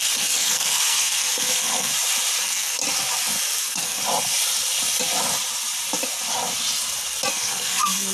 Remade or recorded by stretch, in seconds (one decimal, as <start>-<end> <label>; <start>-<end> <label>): 0.0-1.9 remade; 1.9-2.4 recorded; 2.4-2.8 remade; 2.8-3.6 recorded; 3.6-4.0 remade; 4.0-7.3 recorded; 7.3-8.1 remade